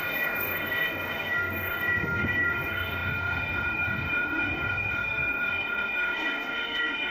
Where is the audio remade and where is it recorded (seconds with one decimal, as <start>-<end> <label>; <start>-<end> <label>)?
0.0-7.1 remade